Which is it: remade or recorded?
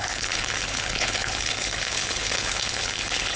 remade